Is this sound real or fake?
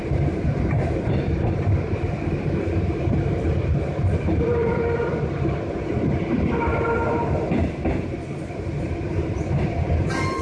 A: fake